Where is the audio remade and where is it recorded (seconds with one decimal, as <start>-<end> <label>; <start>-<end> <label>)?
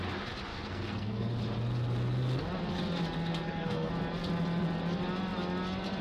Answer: 0.0-0.5 recorded; 0.5-1.3 remade; 1.3-3.3 recorded; 3.3-3.9 remade; 3.9-6.0 recorded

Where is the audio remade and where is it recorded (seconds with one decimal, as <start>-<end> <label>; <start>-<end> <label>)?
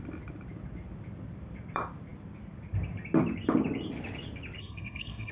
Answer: 0.0-4.6 recorded; 4.6-5.3 remade